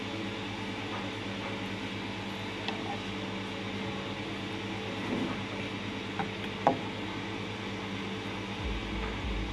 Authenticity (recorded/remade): recorded